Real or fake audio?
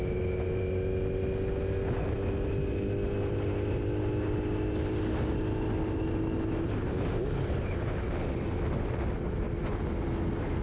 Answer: real